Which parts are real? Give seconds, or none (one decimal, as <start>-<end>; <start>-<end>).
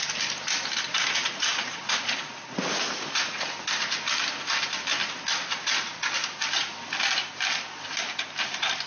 0.0-0.9; 3.4-5.3; 6.0-8.9